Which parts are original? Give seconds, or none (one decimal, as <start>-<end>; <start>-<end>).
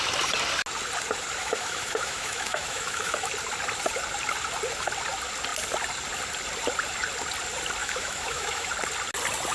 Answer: 0.0-1.4; 3.3-7.8; 8.7-9.5